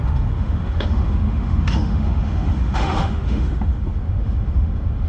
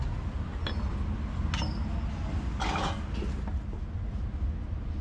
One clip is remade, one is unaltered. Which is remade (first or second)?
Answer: first